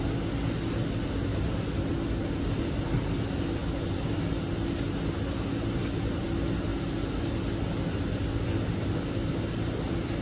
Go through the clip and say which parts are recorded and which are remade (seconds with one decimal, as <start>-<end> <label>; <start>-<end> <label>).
0.0-10.2 recorded